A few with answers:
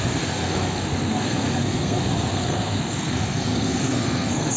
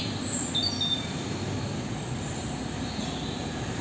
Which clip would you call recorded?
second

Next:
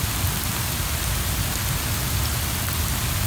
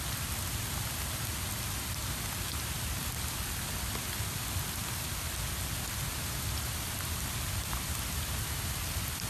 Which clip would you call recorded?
first